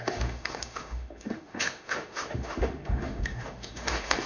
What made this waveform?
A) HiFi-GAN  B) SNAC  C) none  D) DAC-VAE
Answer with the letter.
D